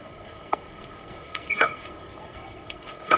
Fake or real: fake